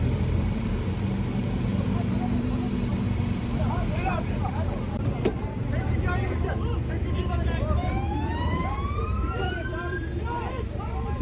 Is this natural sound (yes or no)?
no